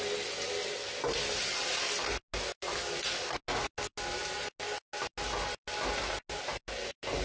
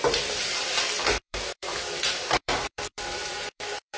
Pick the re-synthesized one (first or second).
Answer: second